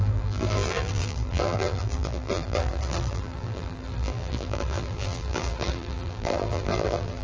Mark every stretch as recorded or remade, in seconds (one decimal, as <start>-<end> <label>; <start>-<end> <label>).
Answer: 0.0-7.2 remade